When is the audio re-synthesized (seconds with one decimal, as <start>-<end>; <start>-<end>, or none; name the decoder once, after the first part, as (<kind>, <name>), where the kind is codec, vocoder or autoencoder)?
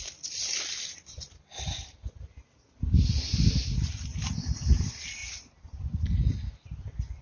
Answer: none